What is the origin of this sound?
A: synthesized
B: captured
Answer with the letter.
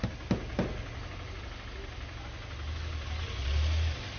B